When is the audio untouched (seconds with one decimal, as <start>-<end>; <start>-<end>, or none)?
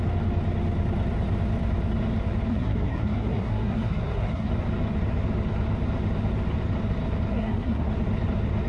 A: 0.0-2.5; 4.5-7.3; 7.9-8.7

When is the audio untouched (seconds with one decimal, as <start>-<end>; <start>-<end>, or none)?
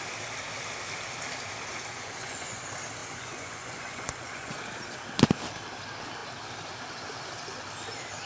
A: 0.0-1.9; 2.6-3.0; 4.6-8.3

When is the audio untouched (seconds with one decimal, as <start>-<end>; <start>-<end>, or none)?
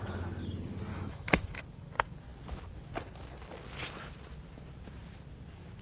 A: 0.0-0.9; 1.6-5.8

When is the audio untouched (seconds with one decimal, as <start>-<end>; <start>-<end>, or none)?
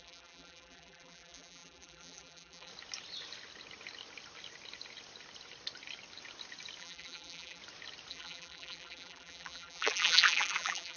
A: 2.7-6.8; 7.6-8.1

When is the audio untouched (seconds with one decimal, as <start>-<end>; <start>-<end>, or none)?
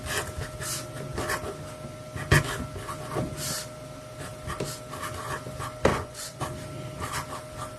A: 0.0-5.9; 6.4-7.8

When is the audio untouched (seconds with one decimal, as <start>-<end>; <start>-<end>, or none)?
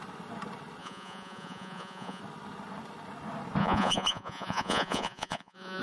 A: 0.0-0.8; 2.2-3.6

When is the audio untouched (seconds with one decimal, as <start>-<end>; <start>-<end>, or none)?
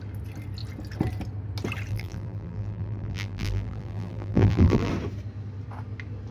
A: 0.0-1.9; 4.9-6.3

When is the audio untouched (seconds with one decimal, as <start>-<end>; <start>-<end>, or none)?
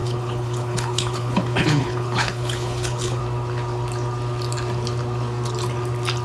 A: 3.2-6.2